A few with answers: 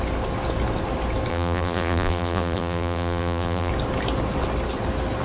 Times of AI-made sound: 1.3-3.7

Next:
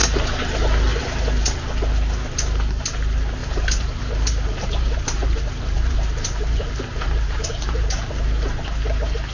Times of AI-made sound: 3.4-8.1

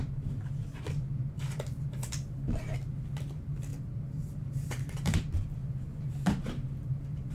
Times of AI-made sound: 3.7-7.3

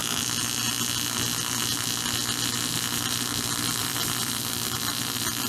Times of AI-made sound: 3.8-5.5

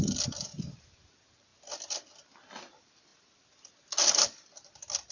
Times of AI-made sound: none